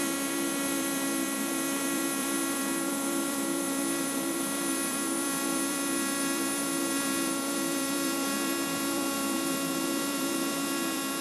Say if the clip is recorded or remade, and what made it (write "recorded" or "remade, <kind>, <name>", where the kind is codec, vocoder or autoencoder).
remade, vocoder, BigVGAN v2